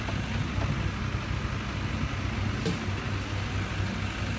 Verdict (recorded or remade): recorded